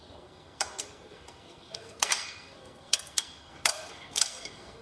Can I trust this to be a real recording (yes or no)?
no